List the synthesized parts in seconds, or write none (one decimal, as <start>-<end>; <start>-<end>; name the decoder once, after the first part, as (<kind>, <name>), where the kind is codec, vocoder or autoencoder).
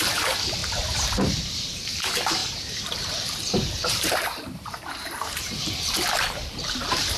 0.0-7.2 (vocoder, BigVGAN v2)